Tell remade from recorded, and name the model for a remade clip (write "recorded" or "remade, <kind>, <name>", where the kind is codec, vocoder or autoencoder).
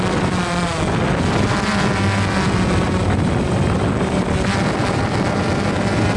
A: recorded